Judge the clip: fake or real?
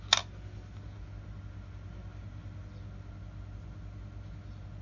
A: real